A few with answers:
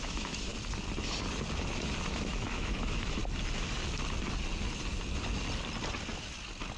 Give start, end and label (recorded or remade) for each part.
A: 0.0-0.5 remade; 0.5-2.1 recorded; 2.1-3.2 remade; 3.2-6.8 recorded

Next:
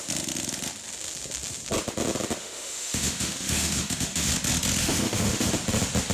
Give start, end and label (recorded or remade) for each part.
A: 0.0-2.4 recorded; 2.4-4.3 remade; 4.3-4.8 recorded; 4.8-5.5 remade; 5.5-6.1 recorded

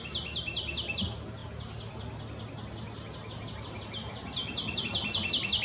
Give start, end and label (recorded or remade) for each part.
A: 0.0-5.6 recorded

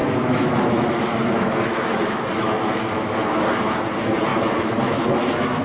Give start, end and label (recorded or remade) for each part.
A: 0.0-3.4 remade; 3.4-4.3 recorded; 4.3-5.6 remade